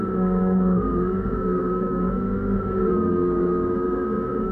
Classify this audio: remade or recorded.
remade